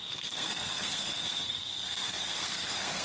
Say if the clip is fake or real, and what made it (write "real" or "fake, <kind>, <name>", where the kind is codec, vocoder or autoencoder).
fake, codec, SNAC